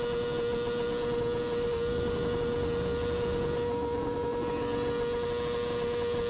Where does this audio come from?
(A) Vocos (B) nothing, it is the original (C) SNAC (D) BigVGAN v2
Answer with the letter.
B